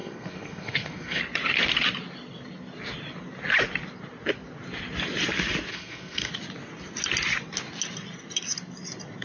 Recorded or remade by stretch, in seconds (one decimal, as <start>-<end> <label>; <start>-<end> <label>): 0.0-1.2 remade; 1.2-5.7 recorded; 5.7-6.3 remade; 6.3-9.2 recorded